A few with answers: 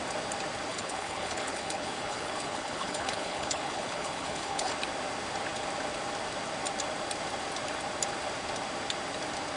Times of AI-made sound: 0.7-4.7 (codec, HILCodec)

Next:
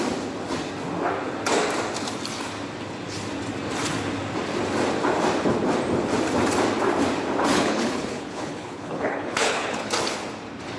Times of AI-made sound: 7.5-9.9 (codec, HILCodec)

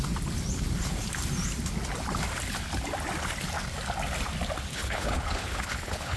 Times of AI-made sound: 4.7-6.2 (codec, HILCodec)

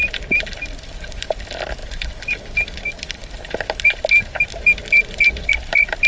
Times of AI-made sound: none